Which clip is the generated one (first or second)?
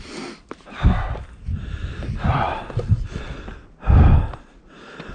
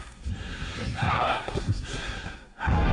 second